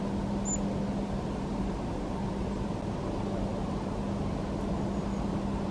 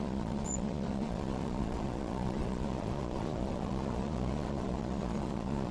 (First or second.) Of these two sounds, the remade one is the second